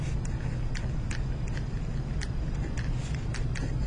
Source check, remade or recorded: recorded